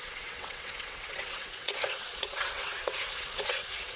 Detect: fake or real fake